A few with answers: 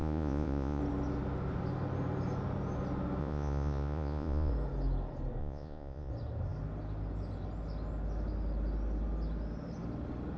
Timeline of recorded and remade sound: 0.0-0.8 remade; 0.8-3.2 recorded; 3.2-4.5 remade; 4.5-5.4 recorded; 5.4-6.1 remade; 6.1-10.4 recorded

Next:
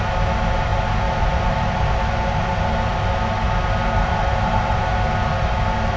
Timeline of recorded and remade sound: 0.0-6.0 recorded

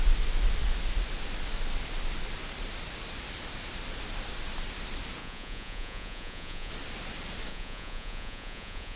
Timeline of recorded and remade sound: 0.0-5.2 recorded; 5.2-6.7 remade; 6.7-7.5 recorded; 7.5-9.0 remade

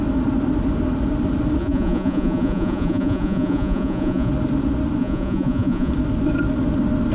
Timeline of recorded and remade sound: 0.0-1.6 recorded; 1.6-4.3 remade; 4.3-5.0 recorded; 5.0-5.9 remade; 5.9-7.1 recorded

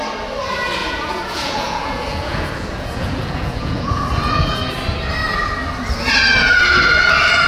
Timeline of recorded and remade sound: 0.0-0.8 recorded; 0.8-4.6 remade; 4.6-7.5 recorded